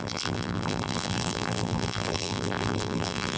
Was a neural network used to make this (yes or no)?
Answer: yes